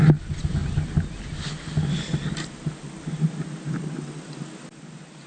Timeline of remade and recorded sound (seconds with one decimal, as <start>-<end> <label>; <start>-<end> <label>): 0.0-5.3 recorded